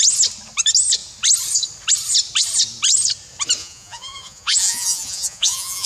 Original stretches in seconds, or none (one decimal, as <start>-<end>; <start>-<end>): 0.0-3.6

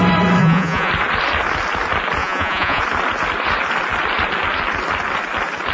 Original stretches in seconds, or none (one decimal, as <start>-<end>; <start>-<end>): 0.0-0.4; 0.9-2.2; 2.8-5.7